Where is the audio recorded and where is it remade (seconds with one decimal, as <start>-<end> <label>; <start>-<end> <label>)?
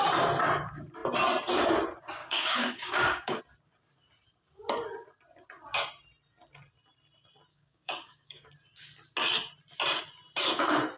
0.0-2.2 recorded; 2.2-3.4 remade; 3.4-7.5 recorded; 7.5-8.5 remade; 8.5-11.0 recorded